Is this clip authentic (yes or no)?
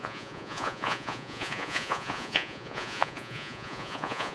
no